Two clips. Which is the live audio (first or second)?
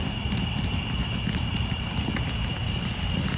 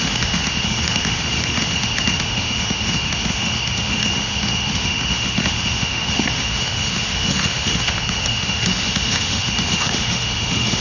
first